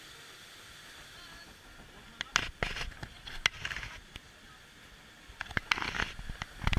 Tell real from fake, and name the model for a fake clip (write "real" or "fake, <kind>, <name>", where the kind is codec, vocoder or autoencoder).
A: real